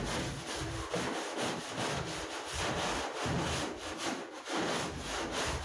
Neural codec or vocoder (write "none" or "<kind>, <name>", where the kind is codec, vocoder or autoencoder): none